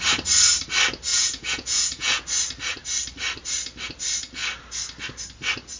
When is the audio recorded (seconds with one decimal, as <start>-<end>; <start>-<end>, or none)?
0.0-1.1; 2.2-5.8